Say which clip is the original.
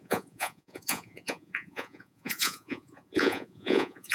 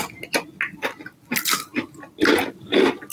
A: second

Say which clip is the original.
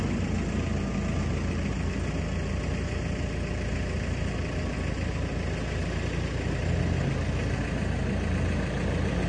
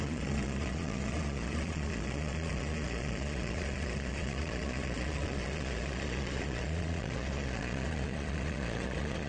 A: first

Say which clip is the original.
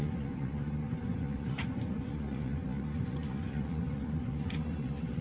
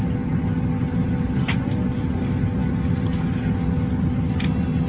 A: second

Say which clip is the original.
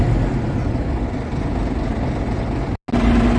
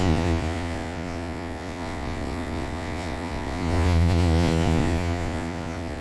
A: first